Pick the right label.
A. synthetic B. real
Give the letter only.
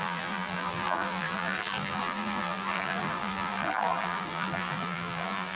A